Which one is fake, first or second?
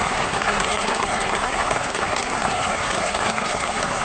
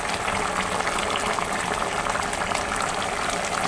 first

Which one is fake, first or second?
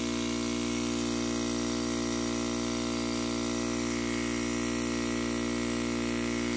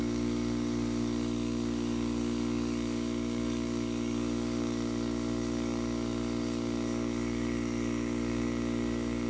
second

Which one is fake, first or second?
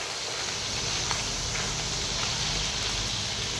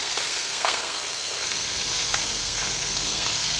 second